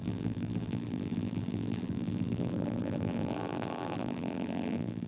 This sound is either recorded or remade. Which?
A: remade